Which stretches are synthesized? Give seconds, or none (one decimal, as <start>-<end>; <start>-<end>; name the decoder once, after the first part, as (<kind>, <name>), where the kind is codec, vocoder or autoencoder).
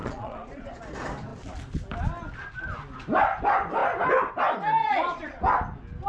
0.0-0.8 (vocoder, Vocos); 4.8-5.4